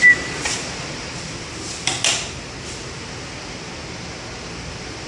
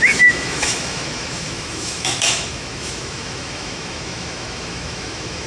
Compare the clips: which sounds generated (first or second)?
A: second